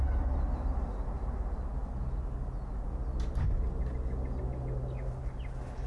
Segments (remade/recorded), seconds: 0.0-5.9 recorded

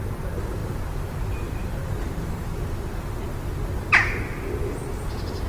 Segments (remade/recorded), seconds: 0.0-4.0 remade; 4.0-4.6 recorded; 4.6-5.5 remade

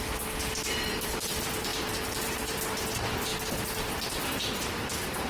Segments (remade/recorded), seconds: 0.0-3.3 remade; 3.3-4.4 recorded; 4.4-5.3 remade